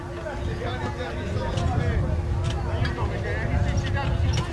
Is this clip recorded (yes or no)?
yes